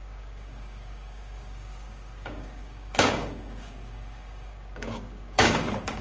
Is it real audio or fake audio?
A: fake